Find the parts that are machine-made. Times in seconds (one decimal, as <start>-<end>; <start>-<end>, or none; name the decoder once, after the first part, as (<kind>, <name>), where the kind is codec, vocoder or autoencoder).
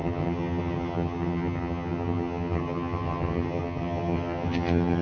0.0-5.0 (vocoder, HiFi-GAN)